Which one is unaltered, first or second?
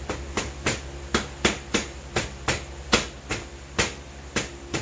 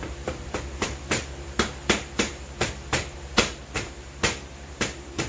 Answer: first